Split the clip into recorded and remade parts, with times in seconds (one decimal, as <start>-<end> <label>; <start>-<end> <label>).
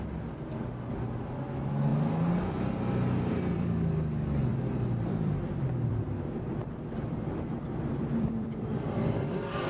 0.0-1.9 remade; 1.9-2.7 recorded; 2.7-9.7 remade